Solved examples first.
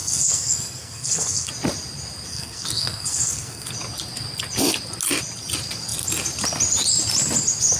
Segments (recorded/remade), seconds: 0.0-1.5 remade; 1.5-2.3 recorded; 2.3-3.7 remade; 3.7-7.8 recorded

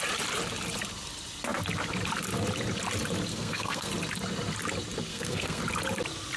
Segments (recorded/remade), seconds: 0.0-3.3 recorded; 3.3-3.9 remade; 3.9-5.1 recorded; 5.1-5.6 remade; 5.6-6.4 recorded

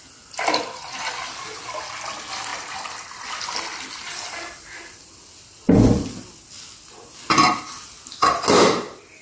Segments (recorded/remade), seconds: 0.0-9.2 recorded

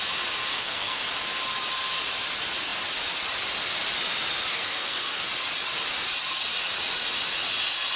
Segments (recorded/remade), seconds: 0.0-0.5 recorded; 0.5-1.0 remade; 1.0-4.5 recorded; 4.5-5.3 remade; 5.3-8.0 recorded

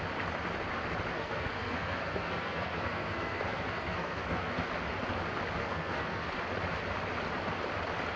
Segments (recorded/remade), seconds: 0.0-1.1 recorded; 1.1-4.7 remade; 4.7-5.6 recorded; 5.6-6.3 remade; 6.3-8.2 recorded